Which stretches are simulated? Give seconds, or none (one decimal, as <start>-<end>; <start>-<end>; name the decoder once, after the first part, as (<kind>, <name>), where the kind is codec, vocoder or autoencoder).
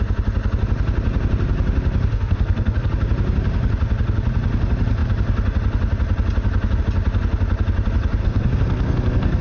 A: 2.1-2.9 (codec, SNAC); 8.2-9.4